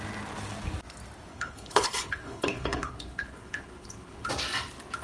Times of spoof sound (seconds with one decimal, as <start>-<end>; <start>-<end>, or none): 1.3-4.3